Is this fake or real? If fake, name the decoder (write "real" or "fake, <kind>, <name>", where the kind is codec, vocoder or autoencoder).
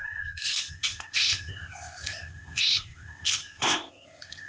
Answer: fake, codec, ZipCodec